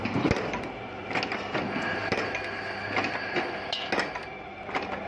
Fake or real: real